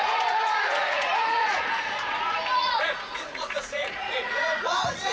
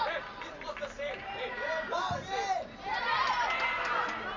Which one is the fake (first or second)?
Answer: first